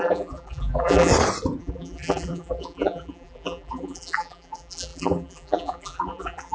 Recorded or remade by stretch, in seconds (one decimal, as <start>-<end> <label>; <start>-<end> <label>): 0.0-1.1 remade; 1.1-1.6 recorded; 1.6-6.5 remade